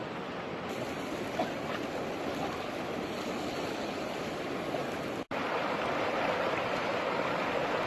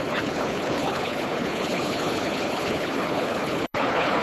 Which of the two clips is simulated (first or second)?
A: second